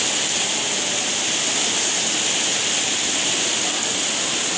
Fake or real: real